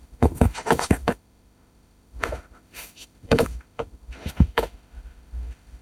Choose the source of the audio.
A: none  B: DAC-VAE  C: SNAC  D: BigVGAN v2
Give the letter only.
B